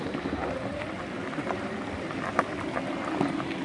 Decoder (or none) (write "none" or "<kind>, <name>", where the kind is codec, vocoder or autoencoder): none